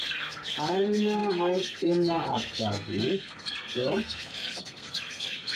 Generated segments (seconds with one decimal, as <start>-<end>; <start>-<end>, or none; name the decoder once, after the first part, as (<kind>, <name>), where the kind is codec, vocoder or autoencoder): 0.0-5.6 (codec, SNAC)